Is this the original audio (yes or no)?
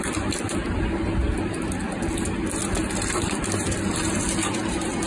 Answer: yes